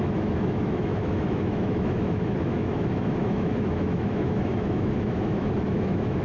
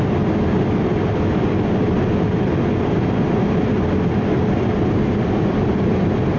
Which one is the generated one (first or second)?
first